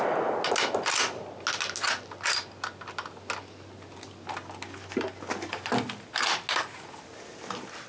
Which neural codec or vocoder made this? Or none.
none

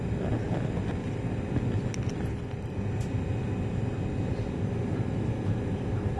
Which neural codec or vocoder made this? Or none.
none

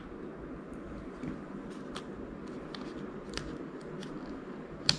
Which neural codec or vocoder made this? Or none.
none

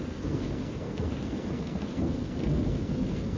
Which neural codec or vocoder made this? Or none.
codec, SNAC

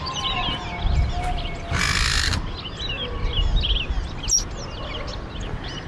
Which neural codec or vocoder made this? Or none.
none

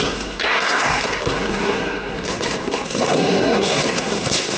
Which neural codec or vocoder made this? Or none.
codec, SNAC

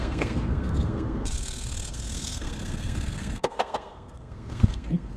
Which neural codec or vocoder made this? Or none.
codec, SNAC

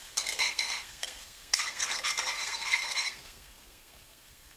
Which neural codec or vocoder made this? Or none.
codec, SNAC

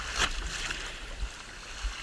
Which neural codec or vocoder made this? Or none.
none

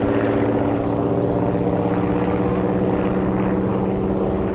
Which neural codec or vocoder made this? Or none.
none